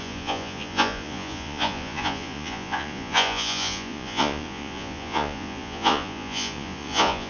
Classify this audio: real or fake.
fake